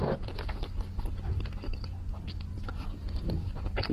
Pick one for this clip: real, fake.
real